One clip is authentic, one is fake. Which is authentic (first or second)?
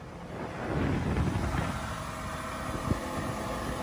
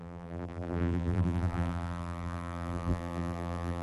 first